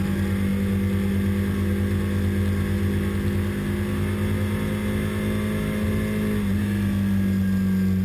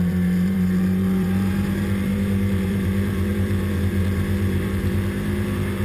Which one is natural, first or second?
first